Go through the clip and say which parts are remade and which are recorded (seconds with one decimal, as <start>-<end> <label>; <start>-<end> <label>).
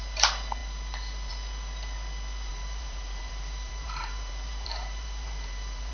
0.0-2.5 recorded; 2.5-5.9 remade